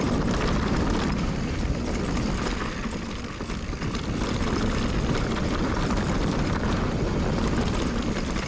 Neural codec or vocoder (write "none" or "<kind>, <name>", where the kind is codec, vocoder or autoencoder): vocoder, BigVGAN v2